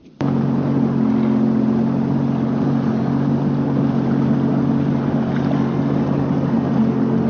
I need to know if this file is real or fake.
real